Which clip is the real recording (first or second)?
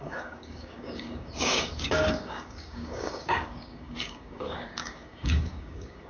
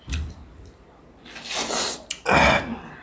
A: second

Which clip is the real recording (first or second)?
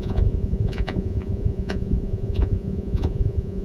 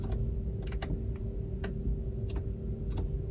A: second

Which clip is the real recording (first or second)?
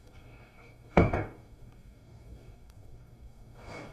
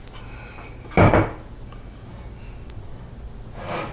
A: second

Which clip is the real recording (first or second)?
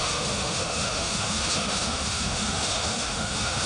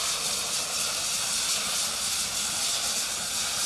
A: second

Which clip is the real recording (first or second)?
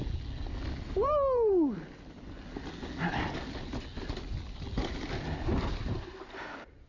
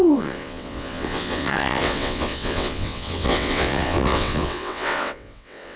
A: first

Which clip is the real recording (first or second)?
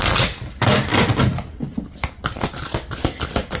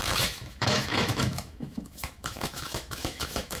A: first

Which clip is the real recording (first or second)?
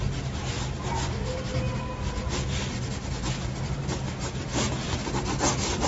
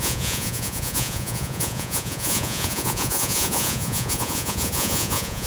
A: first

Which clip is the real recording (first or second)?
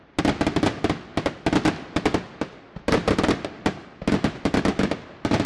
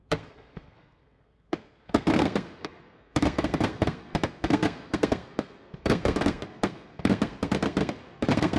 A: first